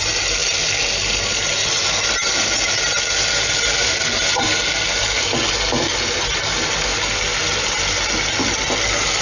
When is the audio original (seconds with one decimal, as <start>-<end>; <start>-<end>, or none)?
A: 0.0-9.2